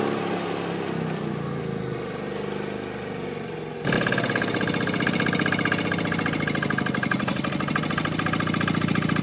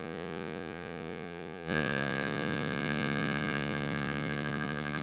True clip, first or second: first